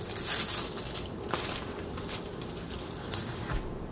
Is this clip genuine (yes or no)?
yes